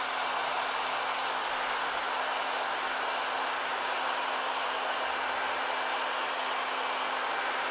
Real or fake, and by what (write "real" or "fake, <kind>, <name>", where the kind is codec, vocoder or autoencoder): real